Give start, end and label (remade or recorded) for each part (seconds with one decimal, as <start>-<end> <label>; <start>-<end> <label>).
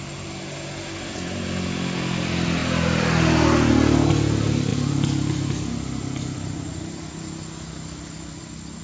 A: 0.0-8.8 recorded